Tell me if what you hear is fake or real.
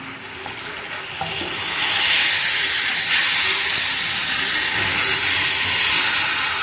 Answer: real